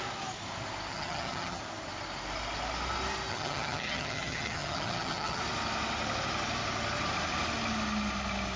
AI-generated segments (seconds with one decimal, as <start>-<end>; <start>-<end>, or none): 0.9-1.6; 3.3-5.4